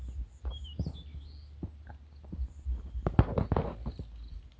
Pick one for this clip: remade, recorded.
recorded